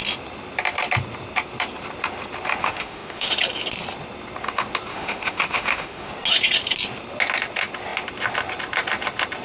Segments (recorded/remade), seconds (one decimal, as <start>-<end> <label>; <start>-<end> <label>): 0.0-2.6 recorded; 2.6-3.3 remade; 3.3-4.9 recorded; 4.9-6.1 remade; 6.1-9.4 recorded